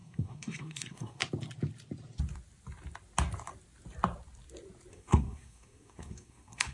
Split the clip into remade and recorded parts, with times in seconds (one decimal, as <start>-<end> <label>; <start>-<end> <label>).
0.0-1.2 remade; 1.2-4.9 recorded; 4.9-6.7 remade